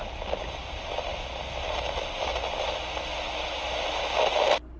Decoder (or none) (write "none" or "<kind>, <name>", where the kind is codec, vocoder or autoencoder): none